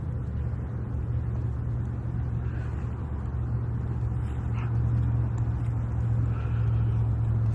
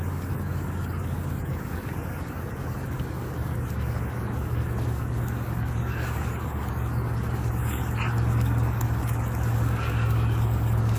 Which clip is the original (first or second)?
first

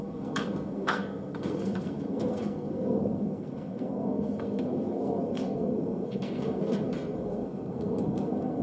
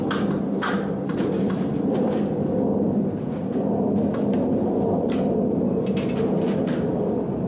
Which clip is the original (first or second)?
second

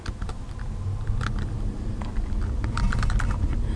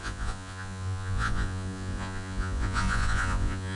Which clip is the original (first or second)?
first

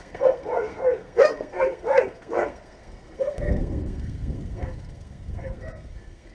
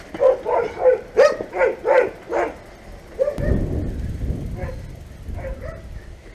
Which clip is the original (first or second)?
second